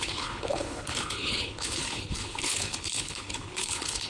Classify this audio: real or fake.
fake